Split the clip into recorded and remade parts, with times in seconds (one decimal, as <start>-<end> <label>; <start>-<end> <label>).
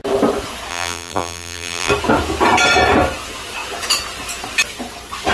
0.0-0.7 recorded; 0.7-1.9 remade; 1.9-5.3 recorded